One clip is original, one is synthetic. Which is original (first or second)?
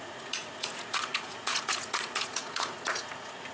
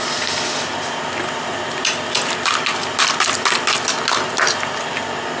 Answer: second